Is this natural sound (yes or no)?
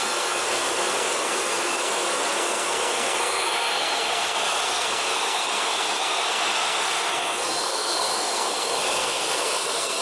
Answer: no